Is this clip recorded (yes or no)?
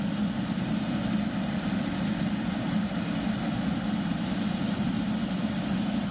no